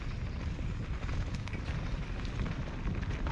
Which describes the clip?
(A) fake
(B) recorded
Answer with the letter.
B